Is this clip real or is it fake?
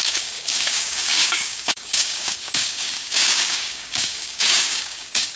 fake